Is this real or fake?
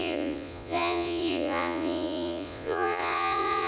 fake